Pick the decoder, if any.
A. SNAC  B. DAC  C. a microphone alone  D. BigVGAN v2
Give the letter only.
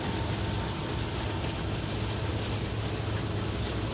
C